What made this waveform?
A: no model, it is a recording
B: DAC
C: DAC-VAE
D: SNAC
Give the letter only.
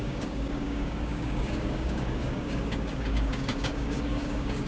B